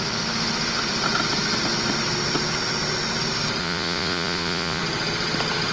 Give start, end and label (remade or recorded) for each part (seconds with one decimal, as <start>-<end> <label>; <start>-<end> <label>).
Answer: 0.0-3.6 recorded; 3.6-4.8 remade; 4.8-5.7 recorded